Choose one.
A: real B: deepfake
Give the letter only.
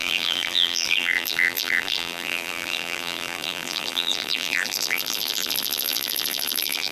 B